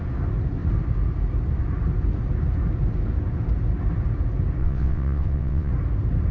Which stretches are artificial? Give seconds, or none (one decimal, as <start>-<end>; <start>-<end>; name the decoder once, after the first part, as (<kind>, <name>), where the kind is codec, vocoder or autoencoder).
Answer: 4.6-5.7 (vocoder, WaveNeXt)